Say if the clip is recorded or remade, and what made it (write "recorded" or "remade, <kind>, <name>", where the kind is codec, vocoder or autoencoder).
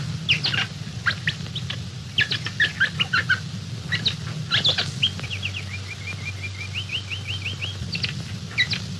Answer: recorded